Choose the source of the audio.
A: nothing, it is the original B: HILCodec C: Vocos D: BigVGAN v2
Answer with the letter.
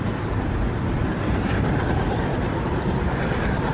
D